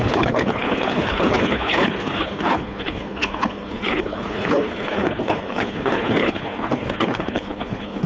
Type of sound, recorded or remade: remade